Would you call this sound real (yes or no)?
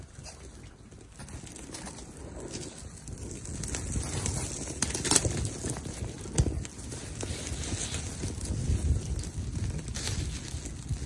yes